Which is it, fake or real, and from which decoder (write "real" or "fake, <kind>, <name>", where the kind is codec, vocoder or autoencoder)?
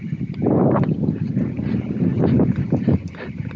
fake, vocoder, BigVGAN v2